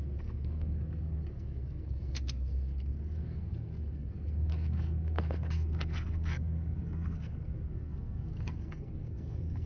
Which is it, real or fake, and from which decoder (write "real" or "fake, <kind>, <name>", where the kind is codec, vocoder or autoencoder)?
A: fake, codec, SNAC